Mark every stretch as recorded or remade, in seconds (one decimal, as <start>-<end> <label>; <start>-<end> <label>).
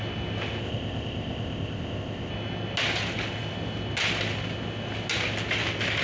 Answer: 0.0-0.6 recorded; 0.6-2.3 remade; 2.3-6.0 recorded